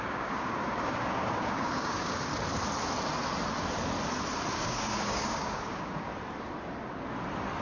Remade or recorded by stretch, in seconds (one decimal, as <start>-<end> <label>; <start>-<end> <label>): 0.0-2.3 remade; 2.3-4.5 recorded; 4.5-6.1 remade; 6.1-7.6 recorded